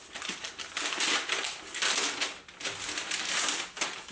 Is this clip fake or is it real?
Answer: real